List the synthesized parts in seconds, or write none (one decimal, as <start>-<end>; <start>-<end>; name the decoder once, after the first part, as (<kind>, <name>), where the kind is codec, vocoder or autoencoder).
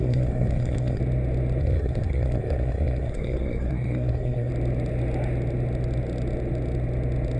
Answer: 0.0-1.0 (codec, SNAC); 1.6-4.5